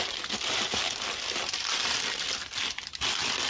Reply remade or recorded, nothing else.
recorded